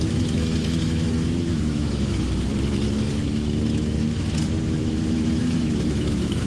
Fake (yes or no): yes